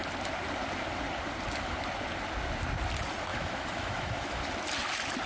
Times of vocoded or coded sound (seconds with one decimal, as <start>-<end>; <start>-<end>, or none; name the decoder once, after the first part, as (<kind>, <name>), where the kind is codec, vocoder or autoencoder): 3.3-4.4 (autoencoder, DAC-VAE)